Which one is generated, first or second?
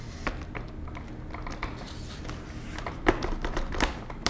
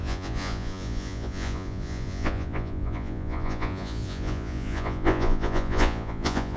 second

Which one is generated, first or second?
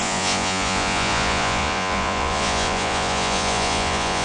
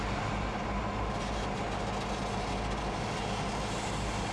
first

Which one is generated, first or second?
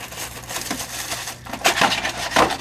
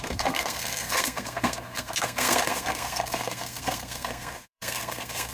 second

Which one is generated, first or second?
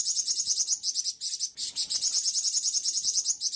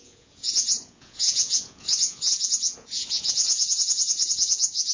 second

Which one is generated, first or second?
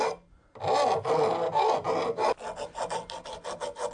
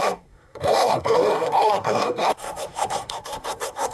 second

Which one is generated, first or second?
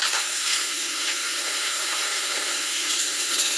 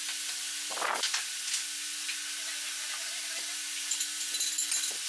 first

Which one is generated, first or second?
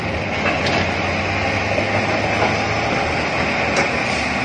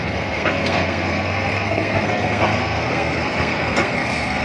second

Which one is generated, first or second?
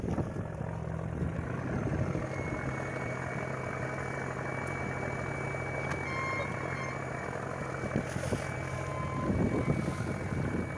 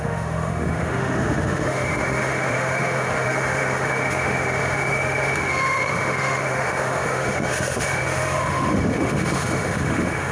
second